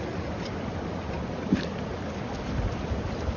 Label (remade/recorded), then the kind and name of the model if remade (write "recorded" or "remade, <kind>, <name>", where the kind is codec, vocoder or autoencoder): recorded